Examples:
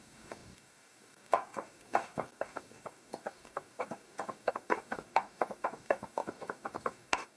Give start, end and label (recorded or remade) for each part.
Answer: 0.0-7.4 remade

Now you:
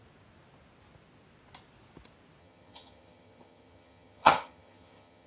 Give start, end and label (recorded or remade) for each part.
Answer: 0.0-2.4 recorded; 2.4-5.3 remade

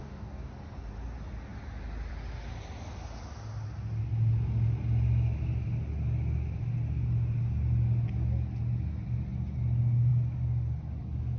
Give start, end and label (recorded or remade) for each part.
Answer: 0.0-0.5 remade; 0.5-11.4 recorded

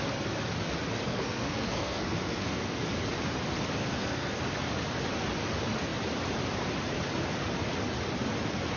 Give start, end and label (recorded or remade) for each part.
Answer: 0.0-1.1 recorded; 1.1-2.8 remade; 2.8-3.8 recorded; 3.8-4.4 remade; 4.4-8.8 recorded

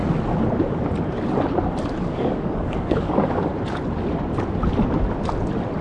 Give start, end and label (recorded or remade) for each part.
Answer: 0.0-2.0 recorded; 2.0-3.5 remade; 3.5-5.8 recorded

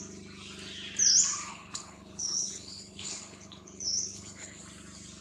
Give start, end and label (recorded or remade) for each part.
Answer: 0.0-1.5 recorded; 1.5-4.6 remade; 4.6-5.2 recorded

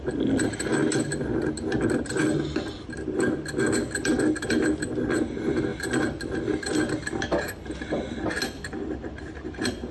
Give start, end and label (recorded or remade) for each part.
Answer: 0.0-9.9 recorded